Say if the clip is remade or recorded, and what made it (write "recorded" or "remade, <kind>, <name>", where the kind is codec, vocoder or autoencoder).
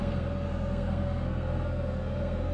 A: remade, codec, SNAC